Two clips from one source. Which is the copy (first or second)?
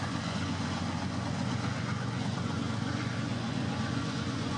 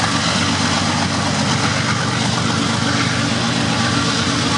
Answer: first